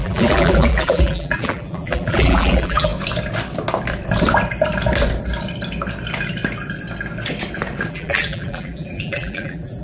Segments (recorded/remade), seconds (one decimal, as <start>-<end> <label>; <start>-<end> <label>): 0.0-2.9 remade; 2.9-7.9 recorded; 7.9-9.8 remade